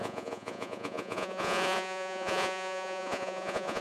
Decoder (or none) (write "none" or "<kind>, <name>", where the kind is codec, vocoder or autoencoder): vocoder, Vocos